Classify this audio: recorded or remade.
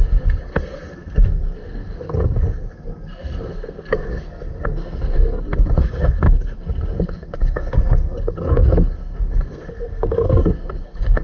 remade